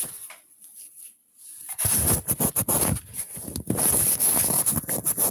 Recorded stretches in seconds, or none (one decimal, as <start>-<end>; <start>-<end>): 1.9-5.3